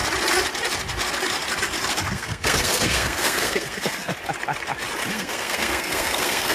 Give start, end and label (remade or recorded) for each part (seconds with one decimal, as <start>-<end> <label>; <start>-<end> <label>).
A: 0.0-1.9 recorded; 1.9-4.1 remade; 4.1-5.1 recorded; 5.1-6.5 remade